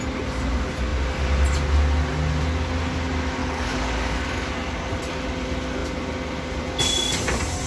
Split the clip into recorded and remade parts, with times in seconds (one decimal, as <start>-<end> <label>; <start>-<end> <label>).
0.0-3.4 recorded; 3.4-4.5 remade; 4.5-7.7 recorded